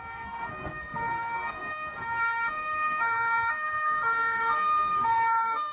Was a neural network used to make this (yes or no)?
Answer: yes